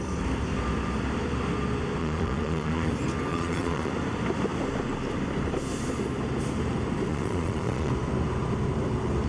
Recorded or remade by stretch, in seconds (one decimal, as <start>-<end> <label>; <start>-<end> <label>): 0.0-2.0 recorded; 2.0-2.9 remade; 2.9-3.3 recorded; 3.3-3.9 remade; 3.9-7.1 recorded; 7.1-7.9 remade; 7.9-9.3 recorded